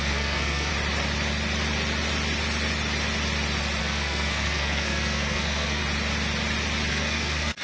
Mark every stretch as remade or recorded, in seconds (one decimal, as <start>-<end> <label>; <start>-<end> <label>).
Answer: 0.0-0.7 remade; 0.7-3.8 recorded; 3.8-5.8 remade; 5.8-6.9 recorded; 6.9-7.6 remade